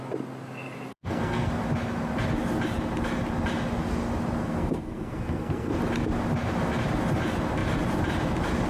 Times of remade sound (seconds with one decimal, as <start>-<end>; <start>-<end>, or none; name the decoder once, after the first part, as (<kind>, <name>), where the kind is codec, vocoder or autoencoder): 0.9-1.5 (codec, SNAC); 4.4-5.8